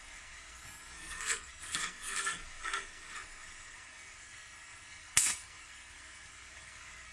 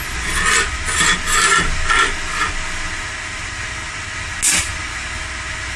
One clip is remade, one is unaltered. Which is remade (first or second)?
first